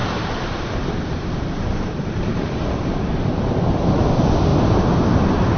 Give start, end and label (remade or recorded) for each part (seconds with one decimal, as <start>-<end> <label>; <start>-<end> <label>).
0.0-3.4 remade; 3.4-4.5 recorded; 4.5-5.6 remade